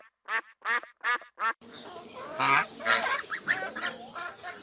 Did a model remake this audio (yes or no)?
no